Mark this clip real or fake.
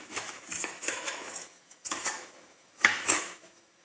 fake